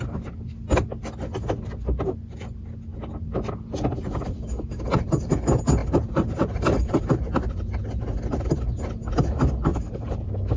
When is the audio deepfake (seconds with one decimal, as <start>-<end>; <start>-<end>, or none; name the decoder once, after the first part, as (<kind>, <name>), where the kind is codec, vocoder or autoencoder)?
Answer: 5.8-7.0 (vocoder, BigVGAN v2); 9.7-10.2